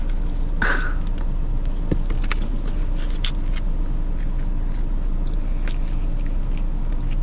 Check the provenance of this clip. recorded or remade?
recorded